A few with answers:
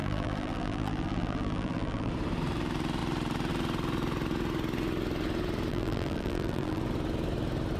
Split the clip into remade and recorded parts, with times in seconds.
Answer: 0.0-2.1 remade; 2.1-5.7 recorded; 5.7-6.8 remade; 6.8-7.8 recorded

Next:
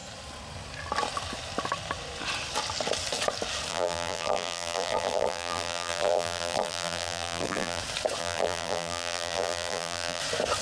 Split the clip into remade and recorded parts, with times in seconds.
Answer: 0.0-3.7 recorded; 3.7-7.8 remade; 7.8-8.2 recorded; 8.2-10.2 remade; 10.2-10.6 recorded

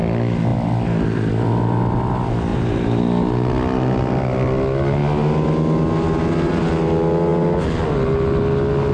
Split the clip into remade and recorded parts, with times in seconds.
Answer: 0.0-2.5 recorded; 2.5-3.0 remade; 3.0-8.9 recorded

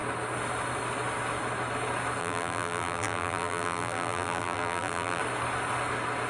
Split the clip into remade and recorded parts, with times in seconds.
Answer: 0.0-2.2 recorded; 2.2-5.2 remade; 5.2-6.3 recorded

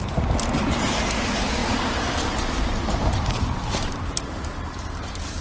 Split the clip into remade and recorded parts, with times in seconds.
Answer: 0.0-5.4 remade